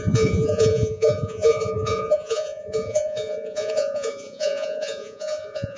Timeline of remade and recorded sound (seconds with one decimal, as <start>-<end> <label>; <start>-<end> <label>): 0.0-5.8 remade